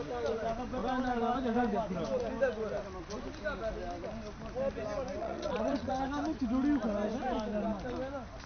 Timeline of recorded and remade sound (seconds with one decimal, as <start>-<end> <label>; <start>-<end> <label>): 0.0-5.2 recorded; 5.2-5.9 remade; 5.9-8.5 recorded